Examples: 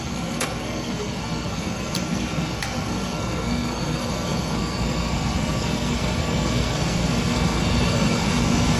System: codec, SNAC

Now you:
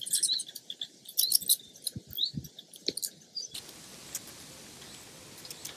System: none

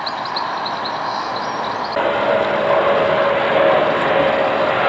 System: none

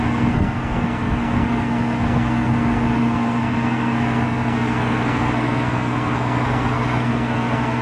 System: codec, SNAC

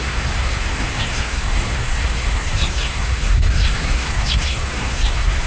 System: codec, SNAC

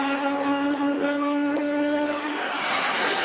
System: codec, SNAC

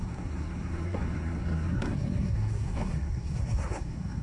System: codec, SNAC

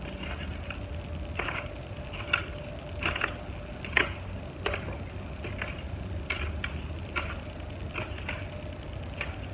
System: none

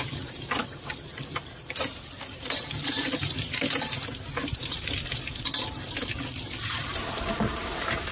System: none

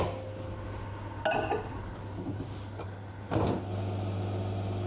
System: none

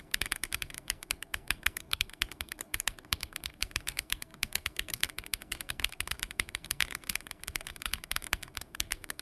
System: codec, SNAC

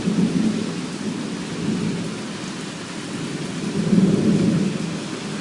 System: none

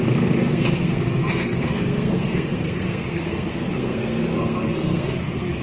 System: codec, SNAC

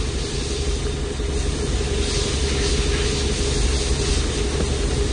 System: none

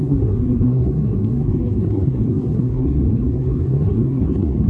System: codec, SNAC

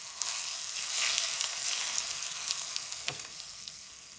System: codec, SNAC